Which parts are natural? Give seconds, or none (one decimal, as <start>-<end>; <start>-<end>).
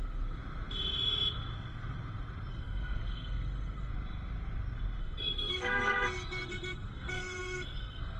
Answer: 0.4-2.5; 3.9-5.0